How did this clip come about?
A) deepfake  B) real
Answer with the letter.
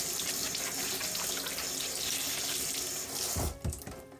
B